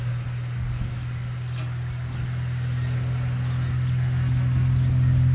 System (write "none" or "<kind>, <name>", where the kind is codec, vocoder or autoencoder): none